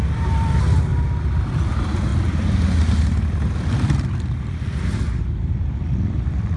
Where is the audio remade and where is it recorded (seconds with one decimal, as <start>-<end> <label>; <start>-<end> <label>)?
0.0-0.9 remade; 0.9-1.4 recorded; 1.4-2.1 remade; 2.1-5.2 recorded; 5.2-6.6 remade